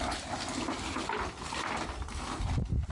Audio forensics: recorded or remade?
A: recorded